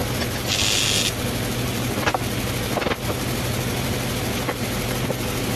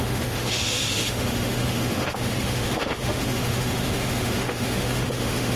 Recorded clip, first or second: first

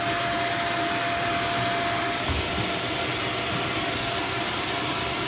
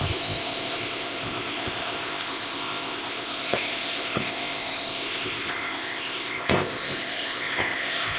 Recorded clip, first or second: first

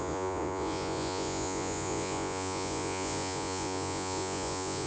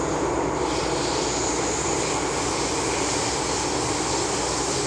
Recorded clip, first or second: second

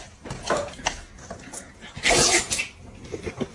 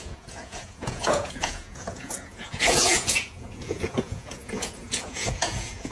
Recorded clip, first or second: first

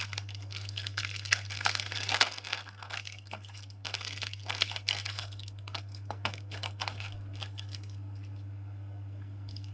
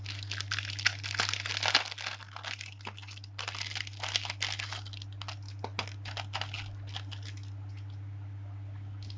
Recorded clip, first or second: second